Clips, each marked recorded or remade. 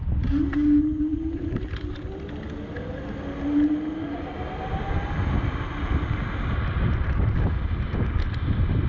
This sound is recorded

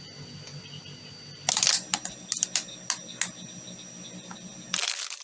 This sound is recorded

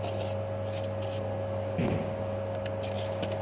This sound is recorded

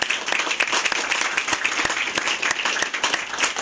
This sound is recorded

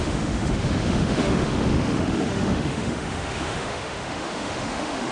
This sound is remade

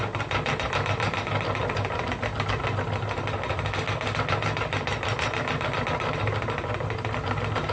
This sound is recorded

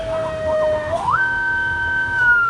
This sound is remade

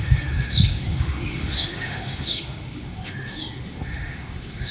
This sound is remade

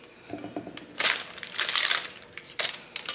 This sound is recorded